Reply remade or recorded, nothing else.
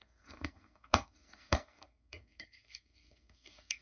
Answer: remade